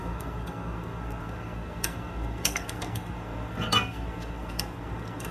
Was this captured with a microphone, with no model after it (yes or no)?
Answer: no